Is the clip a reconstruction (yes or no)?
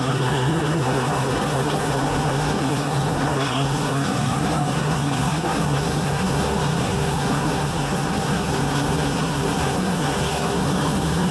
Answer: yes